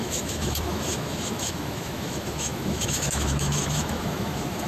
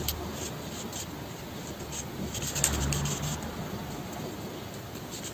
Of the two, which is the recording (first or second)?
second